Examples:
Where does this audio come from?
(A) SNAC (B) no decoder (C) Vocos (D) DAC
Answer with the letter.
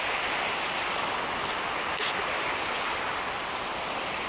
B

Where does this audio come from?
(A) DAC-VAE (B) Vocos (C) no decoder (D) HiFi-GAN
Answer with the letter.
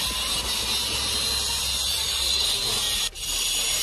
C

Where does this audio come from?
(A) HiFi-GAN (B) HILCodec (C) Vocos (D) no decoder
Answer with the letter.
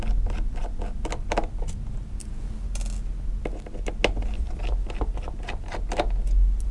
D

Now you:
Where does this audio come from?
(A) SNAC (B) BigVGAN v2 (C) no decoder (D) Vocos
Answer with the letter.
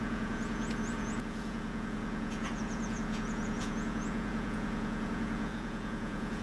D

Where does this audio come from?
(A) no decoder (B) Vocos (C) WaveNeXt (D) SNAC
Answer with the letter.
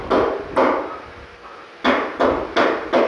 A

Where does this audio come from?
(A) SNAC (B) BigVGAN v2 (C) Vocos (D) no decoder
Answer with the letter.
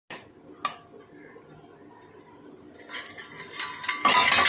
D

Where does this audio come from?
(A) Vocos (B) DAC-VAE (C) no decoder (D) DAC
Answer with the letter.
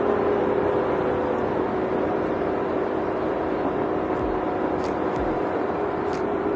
C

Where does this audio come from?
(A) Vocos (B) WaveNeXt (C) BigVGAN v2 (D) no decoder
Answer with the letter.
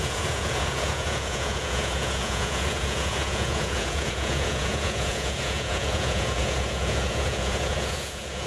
A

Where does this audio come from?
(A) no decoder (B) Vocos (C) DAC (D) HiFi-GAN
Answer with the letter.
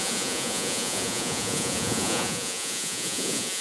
B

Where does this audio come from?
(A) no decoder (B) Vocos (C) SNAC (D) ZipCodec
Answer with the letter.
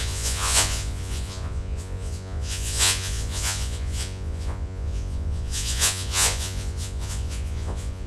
B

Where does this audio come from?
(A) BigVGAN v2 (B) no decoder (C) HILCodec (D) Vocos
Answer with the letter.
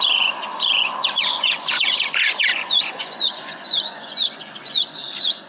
D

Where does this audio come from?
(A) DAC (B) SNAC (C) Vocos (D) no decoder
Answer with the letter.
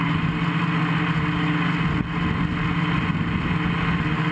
D